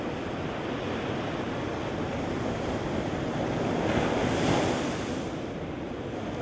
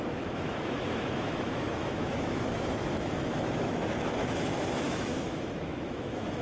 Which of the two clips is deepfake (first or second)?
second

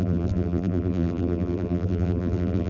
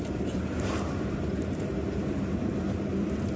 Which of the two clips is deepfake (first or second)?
first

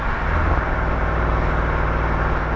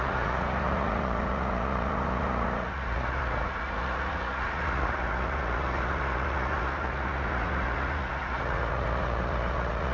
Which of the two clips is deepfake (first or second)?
second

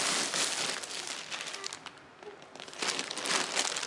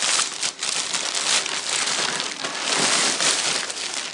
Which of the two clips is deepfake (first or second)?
second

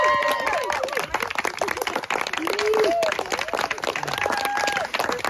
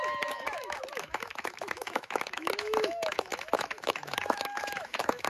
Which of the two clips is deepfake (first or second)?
second